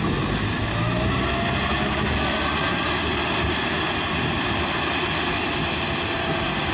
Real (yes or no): yes